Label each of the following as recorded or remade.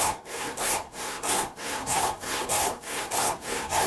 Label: remade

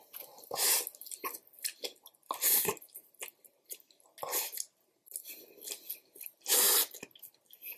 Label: recorded